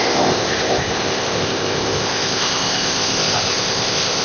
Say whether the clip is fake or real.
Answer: fake